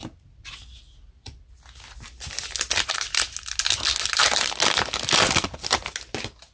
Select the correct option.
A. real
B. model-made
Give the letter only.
A